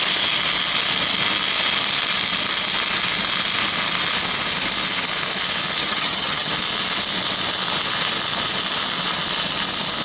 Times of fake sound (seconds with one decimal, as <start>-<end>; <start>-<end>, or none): 5.8-6.5